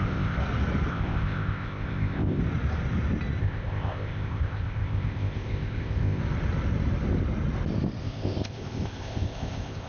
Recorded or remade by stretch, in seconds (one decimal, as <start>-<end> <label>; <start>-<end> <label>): 0.0-0.4 remade; 0.4-0.9 recorded; 0.9-2.4 remade; 2.4-3.4 recorded; 3.4-6.2 remade; 6.2-8.0 recorded; 8.0-9.9 remade

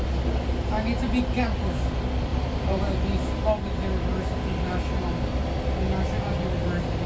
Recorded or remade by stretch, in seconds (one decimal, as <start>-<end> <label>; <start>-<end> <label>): 0.0-2.3 recorded; 2.3-2.9 remade; 2.9-7.1 recorded

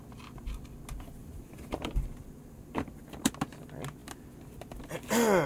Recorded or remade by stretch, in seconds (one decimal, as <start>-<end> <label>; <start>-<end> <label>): 0.0-1.2 recorded; 1.2-3.3 remade; 3.3-5.5 recorded

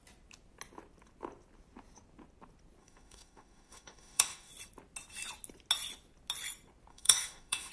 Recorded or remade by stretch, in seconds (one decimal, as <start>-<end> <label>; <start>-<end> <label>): 0.0-2.8 recorded; 2.8-4.5 remade; 4.5-6.9 recorded; 6.9-7.7 remade

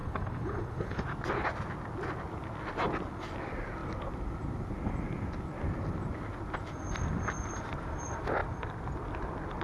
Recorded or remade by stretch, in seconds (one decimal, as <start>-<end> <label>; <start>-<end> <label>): 0.0-1.0 remade; 1.0-9.6 recorded

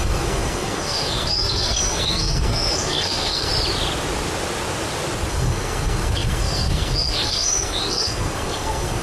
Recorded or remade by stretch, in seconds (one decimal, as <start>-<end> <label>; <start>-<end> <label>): 0.0-3.5 remade; 3.5-5.3 recorded; 5.3-9.0 remade

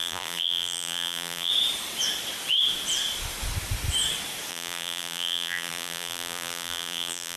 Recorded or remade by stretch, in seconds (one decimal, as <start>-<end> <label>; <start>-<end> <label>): 0.0-1.5 remade; 1.5-4.5 recorded; 4.5-7.4 remade